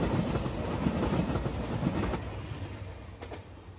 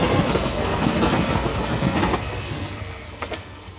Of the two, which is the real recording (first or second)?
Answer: first